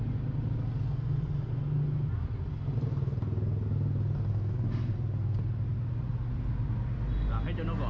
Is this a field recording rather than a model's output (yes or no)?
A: yes